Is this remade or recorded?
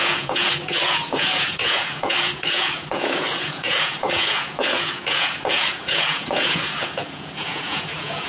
remade